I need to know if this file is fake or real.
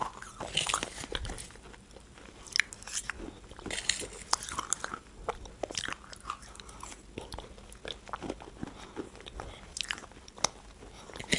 real